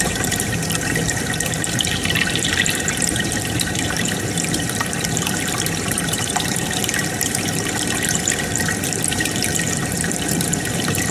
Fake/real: fake